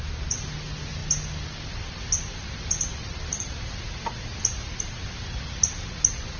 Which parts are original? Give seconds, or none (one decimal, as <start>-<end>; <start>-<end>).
0.0-6.4

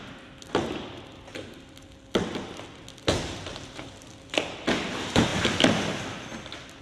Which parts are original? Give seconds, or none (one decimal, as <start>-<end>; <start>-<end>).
0.0-6.8

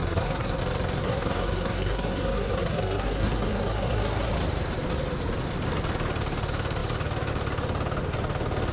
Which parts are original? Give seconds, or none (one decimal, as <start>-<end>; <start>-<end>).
0.6-1.0; 4.3-8.7

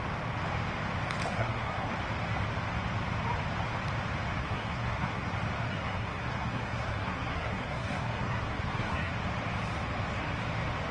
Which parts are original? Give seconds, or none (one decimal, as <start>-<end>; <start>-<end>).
0.0-1.3; 1.9-4.4; 5.3-5.7; 9.1-10.9

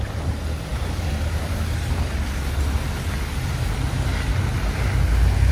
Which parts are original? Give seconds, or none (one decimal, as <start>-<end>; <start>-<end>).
0.0-5.5